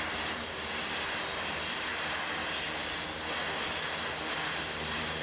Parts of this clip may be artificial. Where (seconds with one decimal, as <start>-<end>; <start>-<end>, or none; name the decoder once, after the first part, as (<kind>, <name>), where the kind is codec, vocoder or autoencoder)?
0.0-2.4 (vocoder, BigVGAN v2); 4.6-5.2